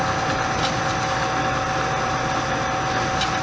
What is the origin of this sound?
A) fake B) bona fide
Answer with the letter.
B